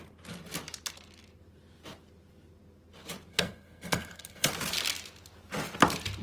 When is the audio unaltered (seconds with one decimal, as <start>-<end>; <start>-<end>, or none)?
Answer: 0.0-3.3; 4.5-6.2